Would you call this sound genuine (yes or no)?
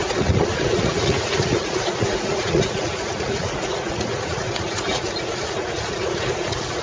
no